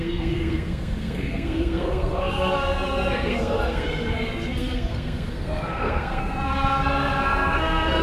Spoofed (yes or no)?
yes